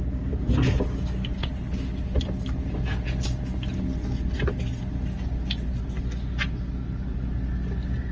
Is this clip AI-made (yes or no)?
no